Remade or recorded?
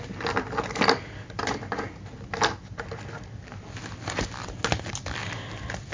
recorded